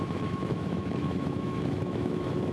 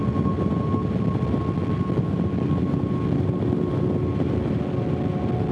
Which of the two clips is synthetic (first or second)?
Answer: first